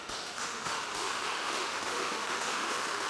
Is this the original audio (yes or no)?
no